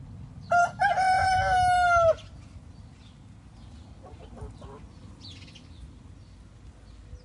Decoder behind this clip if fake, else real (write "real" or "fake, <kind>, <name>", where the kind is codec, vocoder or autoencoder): real